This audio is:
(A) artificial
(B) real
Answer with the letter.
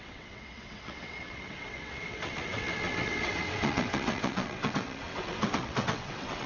A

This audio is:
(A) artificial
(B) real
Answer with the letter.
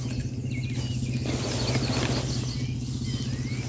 B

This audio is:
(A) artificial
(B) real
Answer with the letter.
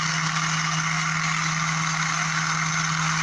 B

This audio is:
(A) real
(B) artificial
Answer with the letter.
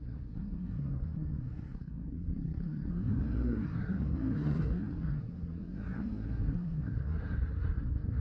B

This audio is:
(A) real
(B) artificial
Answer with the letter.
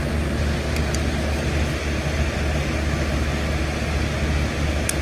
A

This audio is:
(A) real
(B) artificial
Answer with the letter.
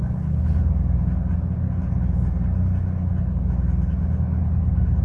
A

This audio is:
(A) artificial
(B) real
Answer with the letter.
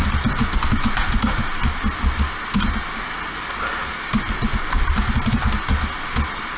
B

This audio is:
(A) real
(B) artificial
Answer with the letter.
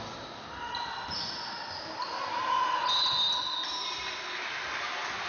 A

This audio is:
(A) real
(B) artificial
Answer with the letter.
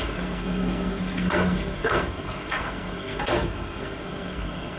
B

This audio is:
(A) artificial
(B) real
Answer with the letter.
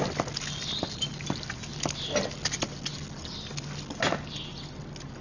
B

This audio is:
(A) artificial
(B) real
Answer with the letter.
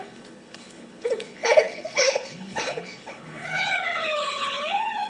A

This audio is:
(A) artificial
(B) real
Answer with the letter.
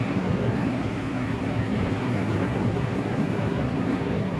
A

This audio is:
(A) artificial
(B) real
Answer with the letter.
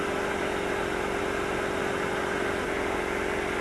B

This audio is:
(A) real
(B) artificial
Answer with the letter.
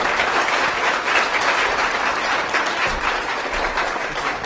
A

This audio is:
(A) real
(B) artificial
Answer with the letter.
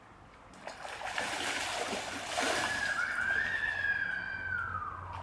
A